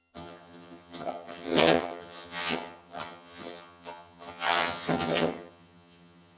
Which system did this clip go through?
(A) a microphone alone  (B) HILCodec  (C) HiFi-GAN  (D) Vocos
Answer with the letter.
C